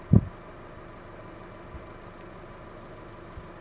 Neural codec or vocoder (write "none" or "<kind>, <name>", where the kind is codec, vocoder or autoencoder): none